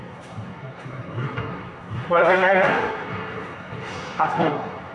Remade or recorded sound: remade